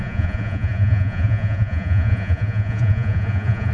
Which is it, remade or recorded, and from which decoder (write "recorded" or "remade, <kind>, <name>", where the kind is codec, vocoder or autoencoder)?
remade, vocoder, Vocos